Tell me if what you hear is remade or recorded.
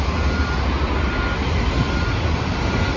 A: recorded